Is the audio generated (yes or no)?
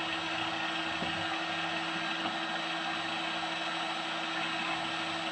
no